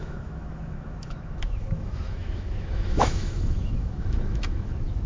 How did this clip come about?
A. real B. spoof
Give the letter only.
B